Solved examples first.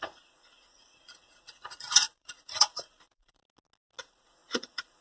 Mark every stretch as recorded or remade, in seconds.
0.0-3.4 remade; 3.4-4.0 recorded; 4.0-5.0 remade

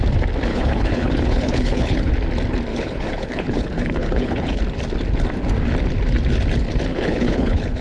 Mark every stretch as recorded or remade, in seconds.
0.0-0.5 recorded; 0.5-2.1 remade; 2.1-2.7 recorded; 2.7-4.6 remade; 4.6-6.9 recorded; 6.9-7.8 remade

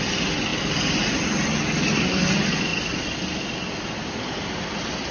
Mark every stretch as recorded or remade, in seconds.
0.0-5.1 recorded

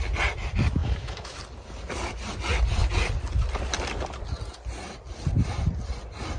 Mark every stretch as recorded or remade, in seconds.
0.0-0.8 recorded; 0.8-1.4 remade; 1.4-6.4 recorded

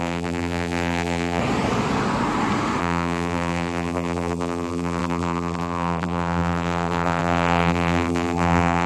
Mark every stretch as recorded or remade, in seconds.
0.0-1.4 remade; 1.4-2.8 recorded; 2.8-8.9 remade

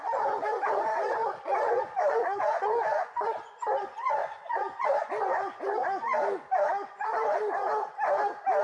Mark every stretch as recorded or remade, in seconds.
0.0-7.7 remade; 7.7-8.6 recorded